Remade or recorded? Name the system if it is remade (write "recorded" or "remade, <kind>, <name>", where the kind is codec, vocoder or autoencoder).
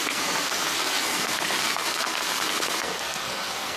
remade, codec, SNAC